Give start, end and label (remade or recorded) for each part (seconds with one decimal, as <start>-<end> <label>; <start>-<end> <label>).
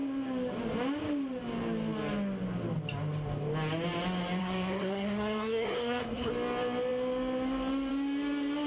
0.0-4.4 recorded; 4.4-6.3 remade; 6.3-8.7 recorded